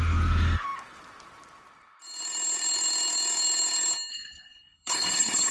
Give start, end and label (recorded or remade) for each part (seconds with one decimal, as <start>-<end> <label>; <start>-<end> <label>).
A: 0.0-4.1 recorded; 4.1-5.5 remade